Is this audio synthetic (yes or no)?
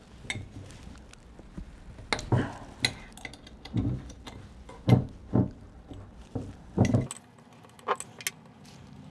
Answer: no